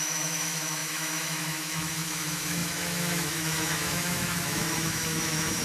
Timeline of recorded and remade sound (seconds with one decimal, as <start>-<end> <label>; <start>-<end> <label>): 0.0-5.6 remade